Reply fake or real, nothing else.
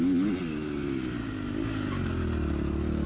real